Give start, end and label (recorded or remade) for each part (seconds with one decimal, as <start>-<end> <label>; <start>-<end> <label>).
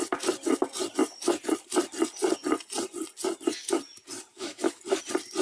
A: 0.0-4.3 recorded; 4.3-4.8 remade; 4.8-5.4 recorded